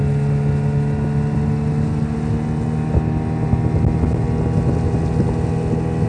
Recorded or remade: recorded